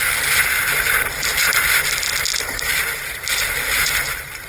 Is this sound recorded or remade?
recorded